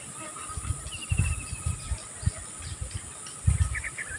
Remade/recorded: recorded